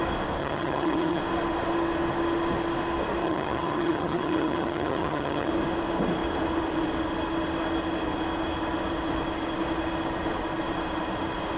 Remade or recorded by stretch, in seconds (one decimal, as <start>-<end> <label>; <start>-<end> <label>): 0.0-0.4 recorded; 0.4-1.2 remade; 1.2-3.2 recorded; 3.2-5.5 remade; 5.5-11.6 recorded